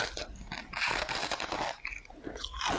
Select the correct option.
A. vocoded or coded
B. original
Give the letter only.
B